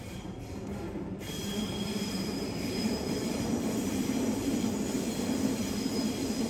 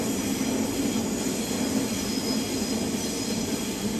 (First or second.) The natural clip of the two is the second